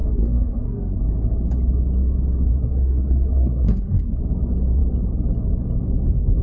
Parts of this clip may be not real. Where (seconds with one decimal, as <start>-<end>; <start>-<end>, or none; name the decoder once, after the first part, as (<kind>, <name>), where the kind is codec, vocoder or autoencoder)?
0.0-1.0 (codec, SNAC); 2.5-4.2